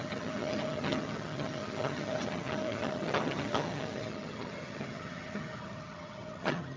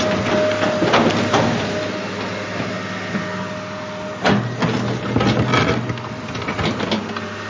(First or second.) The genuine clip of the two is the second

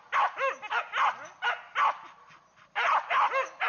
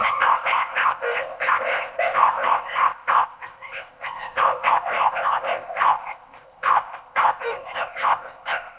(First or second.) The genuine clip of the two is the first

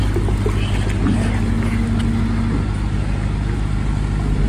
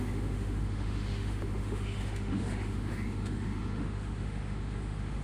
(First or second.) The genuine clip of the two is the first